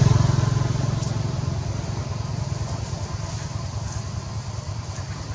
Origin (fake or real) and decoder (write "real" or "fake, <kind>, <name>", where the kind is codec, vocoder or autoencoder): real